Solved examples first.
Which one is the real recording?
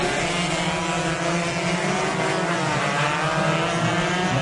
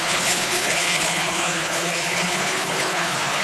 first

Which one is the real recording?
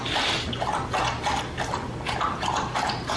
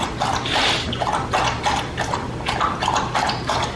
first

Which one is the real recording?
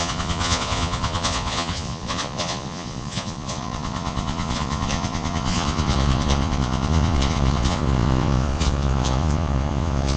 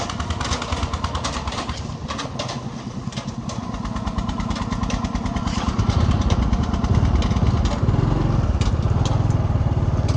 second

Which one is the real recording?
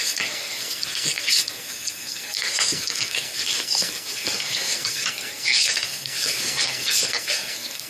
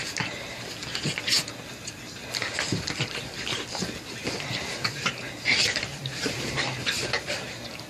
second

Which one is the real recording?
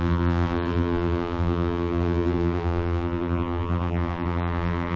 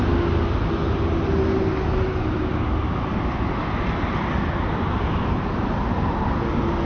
second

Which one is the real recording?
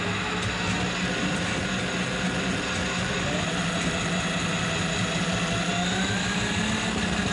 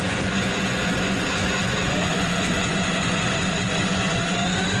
first